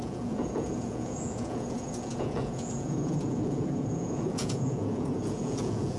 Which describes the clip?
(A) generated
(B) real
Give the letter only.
A